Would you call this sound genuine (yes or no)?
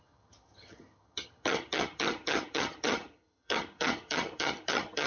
no